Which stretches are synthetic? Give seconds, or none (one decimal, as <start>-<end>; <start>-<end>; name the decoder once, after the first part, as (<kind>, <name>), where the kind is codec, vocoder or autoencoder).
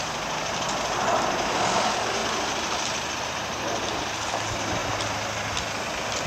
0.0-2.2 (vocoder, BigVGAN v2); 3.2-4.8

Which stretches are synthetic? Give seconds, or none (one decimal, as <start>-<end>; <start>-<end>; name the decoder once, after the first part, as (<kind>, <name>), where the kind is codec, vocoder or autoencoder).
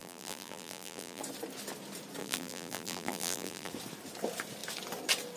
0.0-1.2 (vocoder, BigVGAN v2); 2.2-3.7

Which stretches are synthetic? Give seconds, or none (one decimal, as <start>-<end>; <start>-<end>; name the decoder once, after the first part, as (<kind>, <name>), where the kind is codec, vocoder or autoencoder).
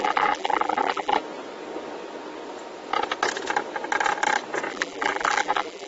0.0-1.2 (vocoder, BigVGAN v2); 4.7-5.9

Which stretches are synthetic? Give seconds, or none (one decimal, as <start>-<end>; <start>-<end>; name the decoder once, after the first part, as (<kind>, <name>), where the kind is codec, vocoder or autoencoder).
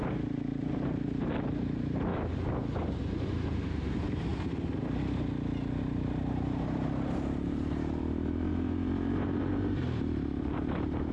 0.0-2.1 (vocoder, BigVGAN v2); 3.0-4.3; 5.8-11.1